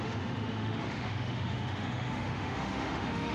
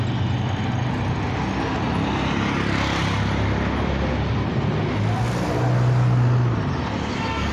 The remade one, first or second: first